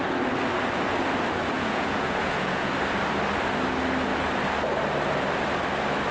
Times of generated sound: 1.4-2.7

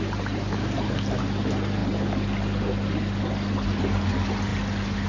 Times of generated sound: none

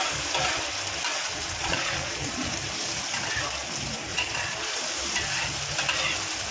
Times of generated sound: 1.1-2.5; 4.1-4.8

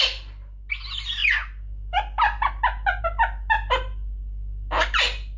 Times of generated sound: none

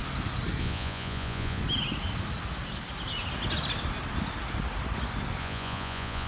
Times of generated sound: 0.6-1.6; 5.4-6.3

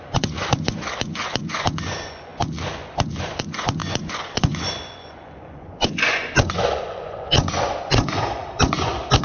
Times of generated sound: 0.0-9.2

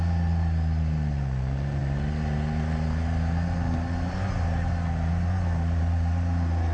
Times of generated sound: none